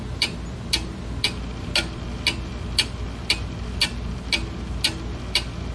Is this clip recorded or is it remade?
recorded